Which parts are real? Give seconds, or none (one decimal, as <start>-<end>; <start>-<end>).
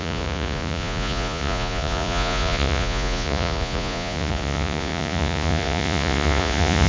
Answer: none